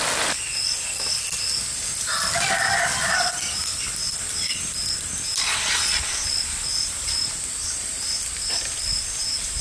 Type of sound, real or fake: real